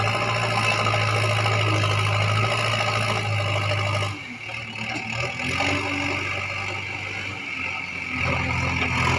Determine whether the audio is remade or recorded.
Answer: recorded